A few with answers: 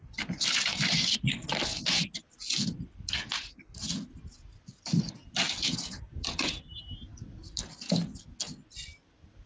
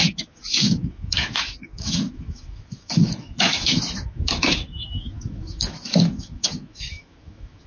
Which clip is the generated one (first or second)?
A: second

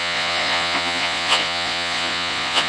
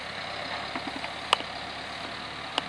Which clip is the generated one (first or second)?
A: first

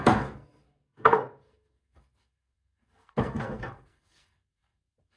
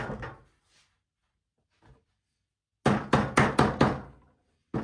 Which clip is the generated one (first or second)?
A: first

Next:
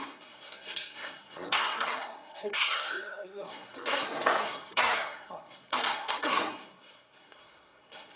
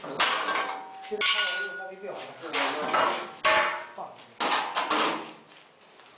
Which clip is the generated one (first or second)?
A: first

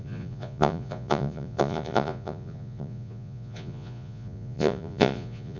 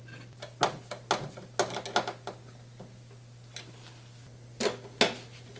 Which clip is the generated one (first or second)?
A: first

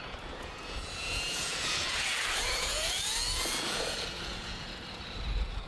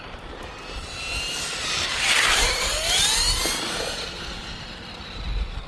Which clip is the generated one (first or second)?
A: first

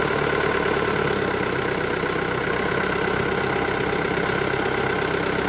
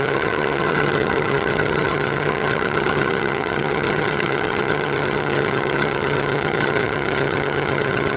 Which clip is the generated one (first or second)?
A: second